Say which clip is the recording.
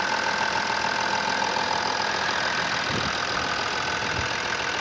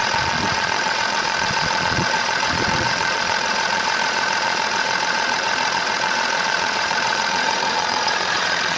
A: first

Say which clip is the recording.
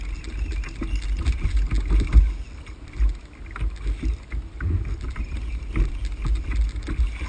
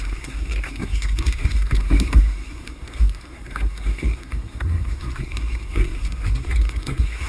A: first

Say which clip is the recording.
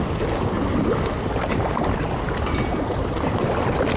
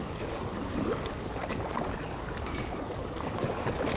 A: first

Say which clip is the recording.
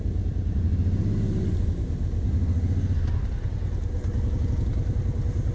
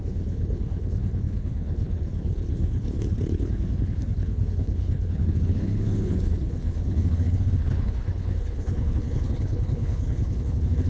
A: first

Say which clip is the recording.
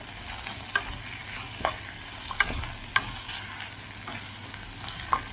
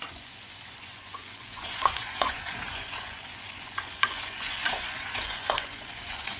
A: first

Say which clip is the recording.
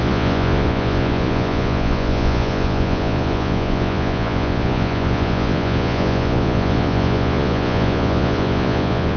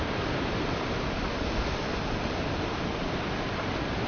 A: second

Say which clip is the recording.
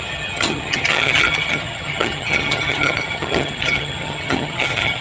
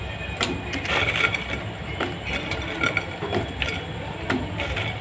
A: second